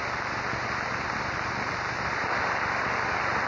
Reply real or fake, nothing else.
real